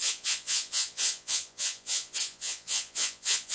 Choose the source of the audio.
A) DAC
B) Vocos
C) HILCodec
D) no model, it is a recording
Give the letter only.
B